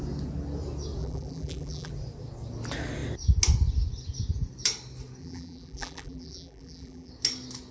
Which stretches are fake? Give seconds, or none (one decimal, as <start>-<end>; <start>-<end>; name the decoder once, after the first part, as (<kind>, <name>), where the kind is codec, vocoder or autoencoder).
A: 1.0-1.9 (vocoder, BigVGAN v2); 5.2-7.1